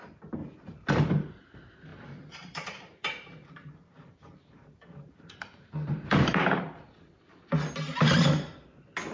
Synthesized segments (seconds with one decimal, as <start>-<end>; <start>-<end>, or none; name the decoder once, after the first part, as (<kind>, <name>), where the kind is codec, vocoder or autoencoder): 1.9-6.6 (vocoder, BigVGAN v2)